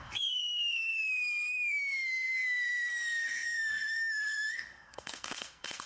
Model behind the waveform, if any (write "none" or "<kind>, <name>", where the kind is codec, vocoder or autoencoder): codec, SNAC